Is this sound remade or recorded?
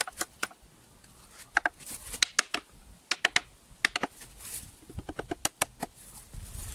recorded